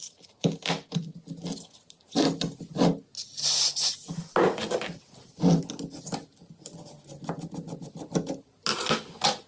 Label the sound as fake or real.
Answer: real